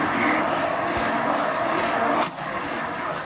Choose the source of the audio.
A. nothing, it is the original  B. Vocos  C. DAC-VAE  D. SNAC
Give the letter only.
A